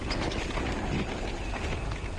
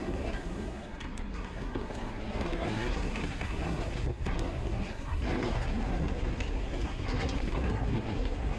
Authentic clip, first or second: first